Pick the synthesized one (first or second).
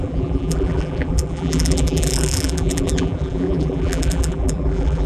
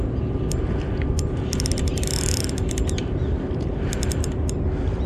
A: first